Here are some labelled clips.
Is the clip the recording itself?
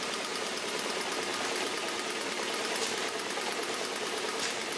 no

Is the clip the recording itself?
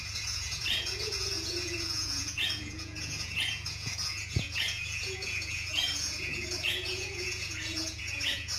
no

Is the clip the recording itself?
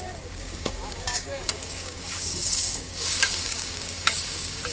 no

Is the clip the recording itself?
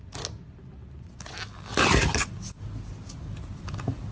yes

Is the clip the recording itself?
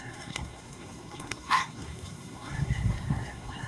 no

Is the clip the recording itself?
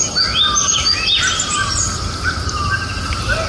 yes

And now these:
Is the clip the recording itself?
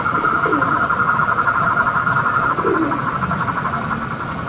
yes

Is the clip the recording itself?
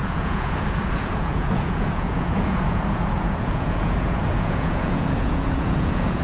no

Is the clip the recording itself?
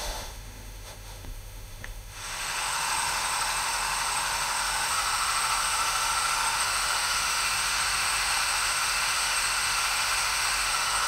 no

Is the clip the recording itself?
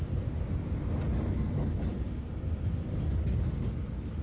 yes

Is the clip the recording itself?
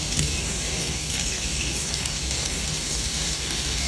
no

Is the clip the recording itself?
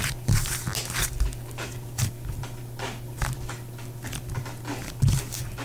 yes